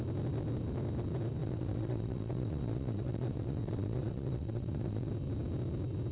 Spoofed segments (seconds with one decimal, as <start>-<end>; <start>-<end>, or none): 1.4-5.1